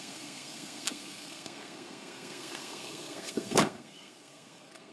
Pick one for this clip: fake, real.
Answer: fake